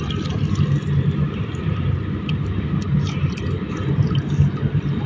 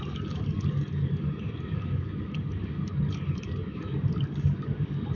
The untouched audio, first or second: first